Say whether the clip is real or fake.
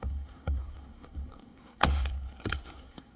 fake